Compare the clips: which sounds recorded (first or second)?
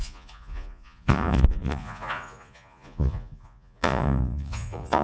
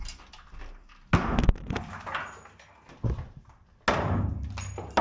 second